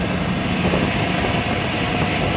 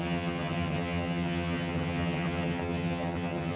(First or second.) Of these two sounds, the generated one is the second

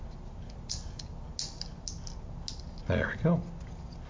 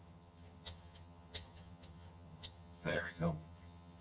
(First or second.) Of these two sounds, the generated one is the second